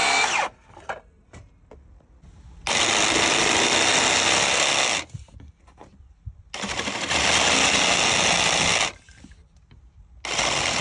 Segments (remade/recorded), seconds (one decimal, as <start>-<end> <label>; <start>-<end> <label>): 0.0-10.8 recorded